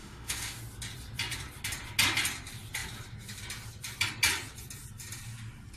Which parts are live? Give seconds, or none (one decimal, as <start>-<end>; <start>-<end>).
0.6-5.8